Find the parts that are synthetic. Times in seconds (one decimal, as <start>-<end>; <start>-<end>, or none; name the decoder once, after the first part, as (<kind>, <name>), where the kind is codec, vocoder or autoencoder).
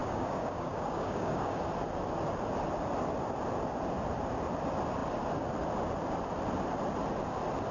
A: 0.0-1.6 (codec, DAC)